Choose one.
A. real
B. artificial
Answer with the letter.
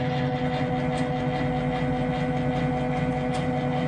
A